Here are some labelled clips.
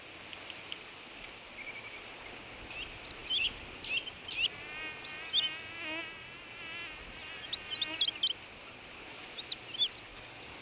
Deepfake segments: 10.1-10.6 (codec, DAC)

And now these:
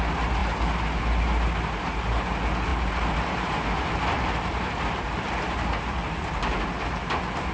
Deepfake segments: 2.7-6.1 (vocoder, BigVGAN v2)

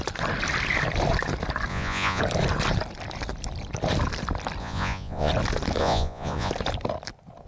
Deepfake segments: 1.7-2.2 (vocoder, Vocos); 4.6-5.3; 5.8-6.5

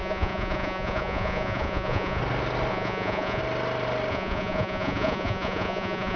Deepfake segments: 0.0-2.2 (vocoder, Vocos); 2.7-3.4; 4.1-6.2

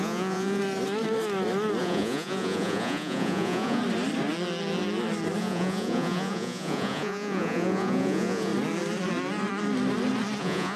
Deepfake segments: 0.0-0.6 (vocoder, Vocos); 1.8-3.8; 5.4-8.5; 10.4-10.8

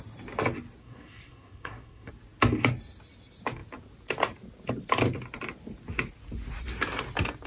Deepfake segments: 0.8-2.1 (codec, SNAC)

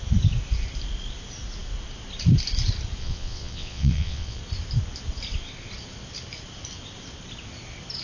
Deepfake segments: 3.0-4.4 (vocoder, WaveNeXt)